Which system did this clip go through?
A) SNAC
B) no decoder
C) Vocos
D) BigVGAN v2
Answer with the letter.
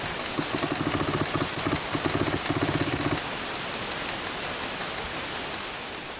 B